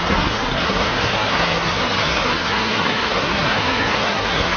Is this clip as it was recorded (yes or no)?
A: no